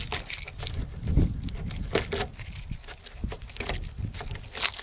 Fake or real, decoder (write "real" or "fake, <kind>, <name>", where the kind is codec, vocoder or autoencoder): real